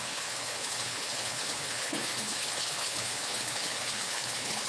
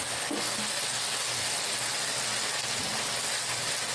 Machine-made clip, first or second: first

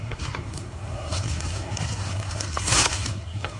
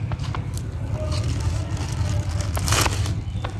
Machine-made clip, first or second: first